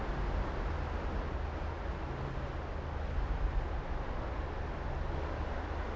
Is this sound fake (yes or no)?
no